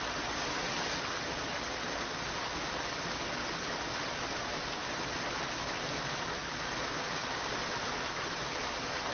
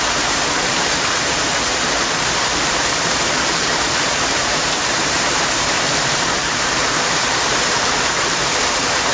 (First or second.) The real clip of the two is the first